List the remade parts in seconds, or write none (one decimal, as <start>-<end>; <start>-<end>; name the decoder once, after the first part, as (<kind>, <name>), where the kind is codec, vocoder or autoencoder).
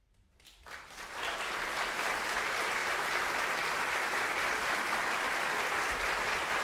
none